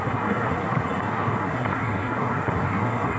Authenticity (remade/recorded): remade